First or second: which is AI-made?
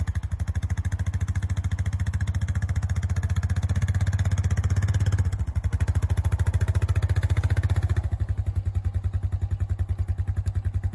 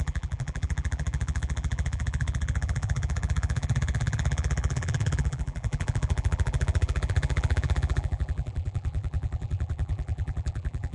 second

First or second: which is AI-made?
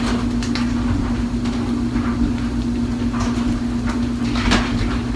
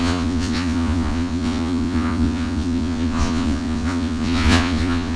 second